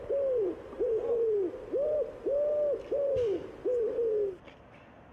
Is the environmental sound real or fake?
real